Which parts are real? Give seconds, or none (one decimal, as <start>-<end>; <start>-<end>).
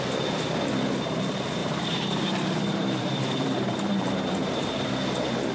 0.0-1.6; 4.9-5.5